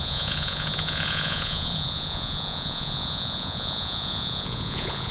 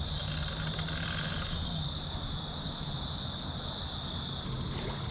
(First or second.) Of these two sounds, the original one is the second